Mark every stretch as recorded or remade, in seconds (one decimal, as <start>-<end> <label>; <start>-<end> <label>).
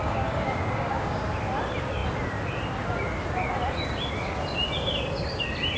0.0-1.2 remade; 1.2-5.8 recorded